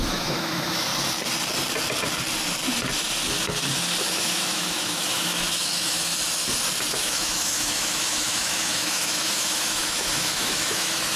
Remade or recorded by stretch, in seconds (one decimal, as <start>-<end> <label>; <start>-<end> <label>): 0.0-0.9 remade; 0.9-4.1 recorded; 4.1-6.1 remade; 6.1-6.9 recorded; 6.9-11.2 remade